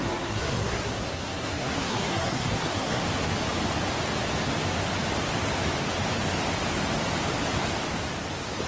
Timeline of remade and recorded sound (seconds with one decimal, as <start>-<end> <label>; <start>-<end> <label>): 0.0-3.0 remade; 3.0-8.7 recorded